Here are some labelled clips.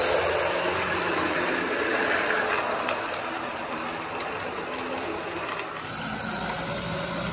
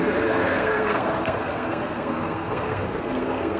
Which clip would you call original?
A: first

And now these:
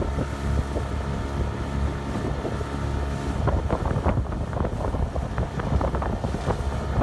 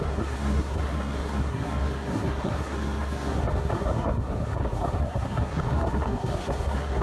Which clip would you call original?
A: first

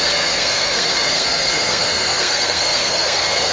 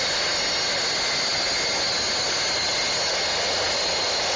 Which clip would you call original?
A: second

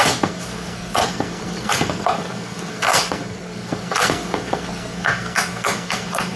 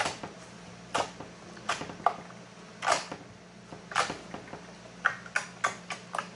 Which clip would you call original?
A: second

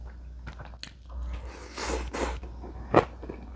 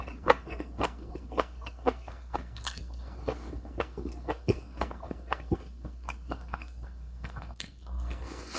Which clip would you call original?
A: first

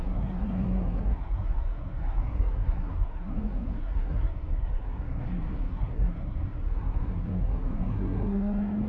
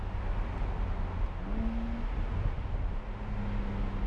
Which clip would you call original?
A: second